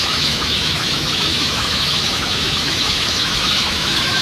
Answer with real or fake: fake